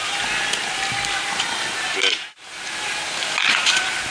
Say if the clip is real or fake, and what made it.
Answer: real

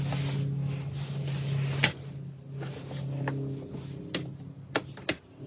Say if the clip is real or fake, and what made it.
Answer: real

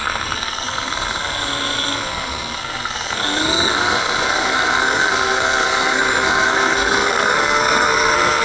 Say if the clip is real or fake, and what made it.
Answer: fake, codec, SNAC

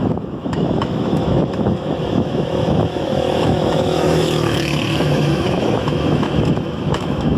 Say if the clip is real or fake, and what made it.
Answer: fake, autoencoder, DAC-VAE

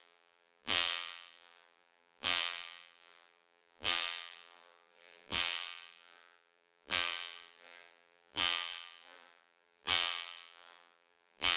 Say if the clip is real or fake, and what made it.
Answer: fake, vocoder, BigVGAN v2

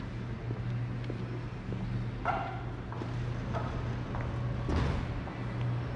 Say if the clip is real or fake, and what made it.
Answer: real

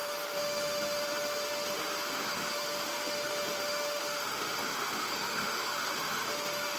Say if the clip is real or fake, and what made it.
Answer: fake, autoencoder, DAC-VAE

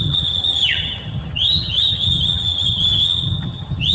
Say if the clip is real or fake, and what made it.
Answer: fake, vocoder, HiFi-GAN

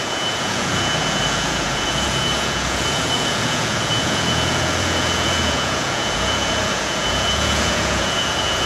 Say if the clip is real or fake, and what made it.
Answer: fake, vocoder, Vocos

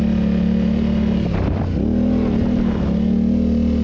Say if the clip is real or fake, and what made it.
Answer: real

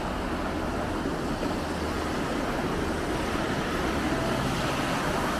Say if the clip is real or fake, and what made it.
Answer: real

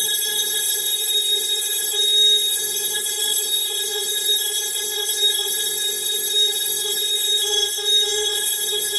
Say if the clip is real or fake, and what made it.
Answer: fake, codec, SNAC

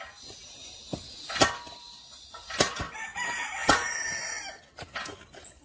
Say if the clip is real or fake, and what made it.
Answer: real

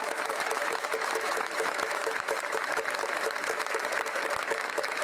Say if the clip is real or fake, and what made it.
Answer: fake, autoencoder, DAC-VAE